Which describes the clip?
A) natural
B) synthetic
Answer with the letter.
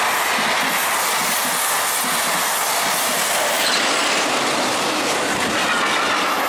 A